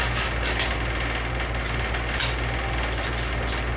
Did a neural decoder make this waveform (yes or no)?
no